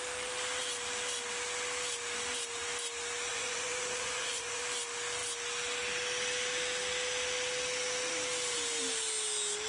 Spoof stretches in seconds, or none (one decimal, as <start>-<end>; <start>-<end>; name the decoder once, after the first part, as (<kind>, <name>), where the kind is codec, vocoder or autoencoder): 3.3-4.6 (vocoder, Vocos)